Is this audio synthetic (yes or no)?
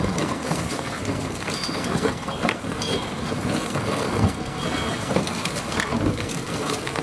yes